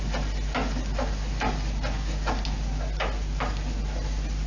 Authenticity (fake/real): real